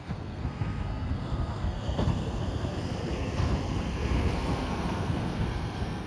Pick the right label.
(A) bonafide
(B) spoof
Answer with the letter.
B